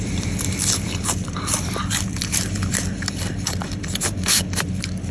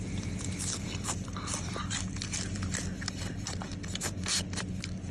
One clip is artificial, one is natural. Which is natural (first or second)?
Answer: second